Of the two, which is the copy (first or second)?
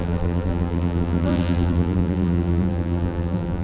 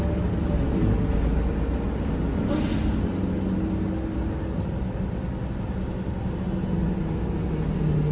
first